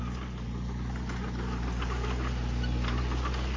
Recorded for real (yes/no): yes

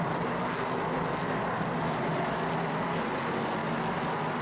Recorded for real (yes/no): yes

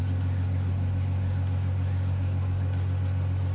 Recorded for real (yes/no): yes